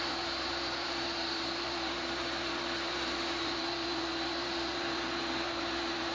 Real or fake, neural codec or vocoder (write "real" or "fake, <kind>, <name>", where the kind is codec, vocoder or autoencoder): fake, vocoder, BigVGAN v2